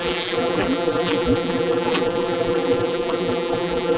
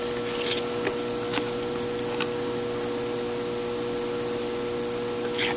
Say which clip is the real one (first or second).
second